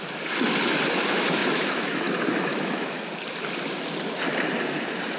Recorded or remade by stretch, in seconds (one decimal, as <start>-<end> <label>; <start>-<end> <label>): 0.0-1.4 recorded; 1.4-2.0 remade; 2.0-2.5 recorded; 2.5-3.1 remade; 3.1-5.2 recorded